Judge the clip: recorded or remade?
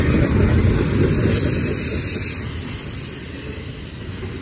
remade